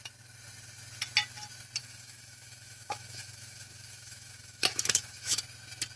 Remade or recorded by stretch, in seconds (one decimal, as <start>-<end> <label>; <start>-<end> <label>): 0.0-1.8 recorded; 1.8-5.4 remade; 5.4-6.0 recorded